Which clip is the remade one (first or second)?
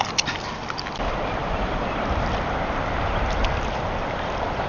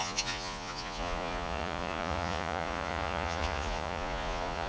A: second